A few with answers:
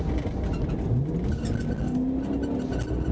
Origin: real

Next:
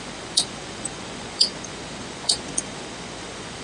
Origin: fake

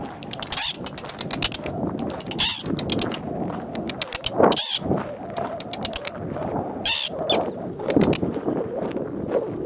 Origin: real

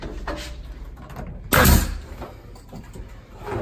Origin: real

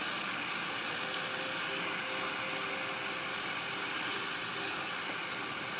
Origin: real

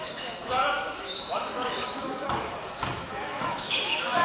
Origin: fake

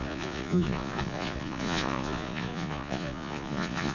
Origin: fake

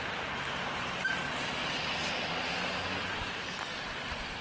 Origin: real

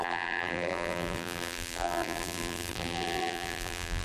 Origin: fake